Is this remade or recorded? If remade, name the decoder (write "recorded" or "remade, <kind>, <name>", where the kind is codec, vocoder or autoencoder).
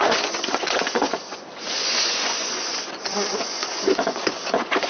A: remade, vocoder, Vocos